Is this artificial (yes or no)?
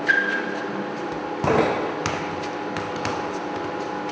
no